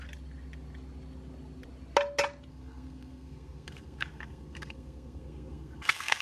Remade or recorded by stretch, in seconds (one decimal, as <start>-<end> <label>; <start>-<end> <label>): 0.0-2.5 recorded; 2.5-6.2 remade